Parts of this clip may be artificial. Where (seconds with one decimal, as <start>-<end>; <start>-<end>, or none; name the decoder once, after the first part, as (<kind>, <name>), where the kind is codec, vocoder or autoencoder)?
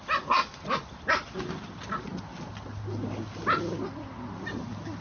none